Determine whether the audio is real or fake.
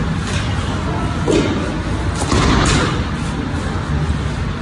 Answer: real